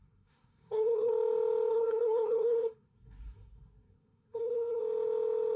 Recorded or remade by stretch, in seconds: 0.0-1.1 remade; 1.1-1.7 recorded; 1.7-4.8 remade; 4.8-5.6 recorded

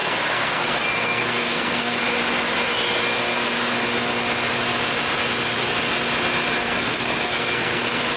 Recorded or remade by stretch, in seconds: 0.0-2.0 remade; 2.0-6.6 recorded; 6.6-8.2 remade

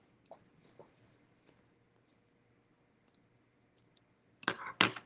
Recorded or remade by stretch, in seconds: 0.0-5.1 recorded

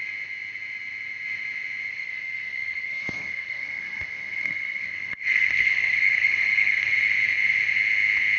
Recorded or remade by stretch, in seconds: 0.0-1.9 recorded; 1.9-6.9 remade; 6.9-8.4 recorded

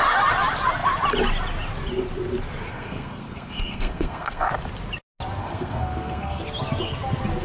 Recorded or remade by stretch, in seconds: 0.0-2.7 recorded; 2.7-4.5 remade; 4.5-5.4 recorded; 5.4-6.4 remade; 6.4-7.4 recorded

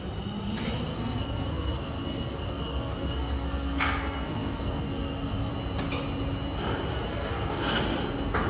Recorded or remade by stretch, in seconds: 0.0-0.9 recorded; 0.9-5.5 remade; 5.5-7.1 recorded; 7.1-7.8 remade; 7.8-8.5 recorded